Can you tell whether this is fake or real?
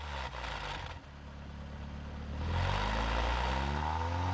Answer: real